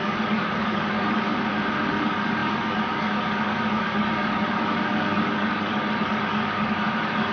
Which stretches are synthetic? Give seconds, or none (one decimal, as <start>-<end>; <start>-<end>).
0.0-1.3; 1.9-7.3